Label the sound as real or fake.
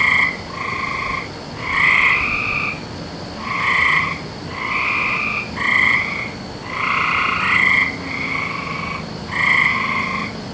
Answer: real